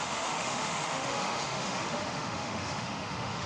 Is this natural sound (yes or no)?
no